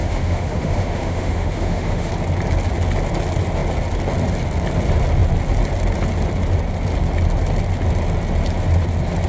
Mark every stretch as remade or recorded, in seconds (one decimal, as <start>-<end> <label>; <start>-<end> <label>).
0.0-2.1 remade; 2.1-9.3 recorded